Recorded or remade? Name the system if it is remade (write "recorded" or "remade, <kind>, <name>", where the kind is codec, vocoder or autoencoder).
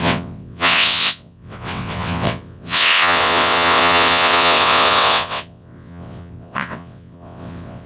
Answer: remade, vocoder, WaveNeXt